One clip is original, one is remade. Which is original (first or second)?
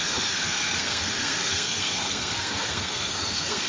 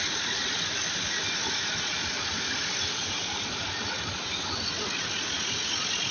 second